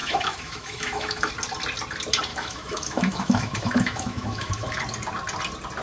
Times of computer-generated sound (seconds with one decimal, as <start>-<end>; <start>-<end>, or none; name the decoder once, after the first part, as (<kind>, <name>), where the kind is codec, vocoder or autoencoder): 0.0-1.3 (autoencoder, DAC-VAE); 2.3-4.8